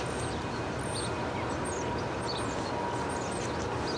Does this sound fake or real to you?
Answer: real